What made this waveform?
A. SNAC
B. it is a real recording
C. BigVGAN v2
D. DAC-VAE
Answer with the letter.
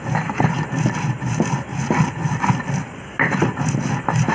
B